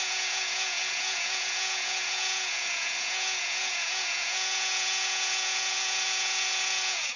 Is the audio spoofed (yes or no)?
yes